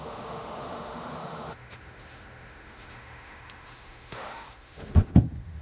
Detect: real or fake fake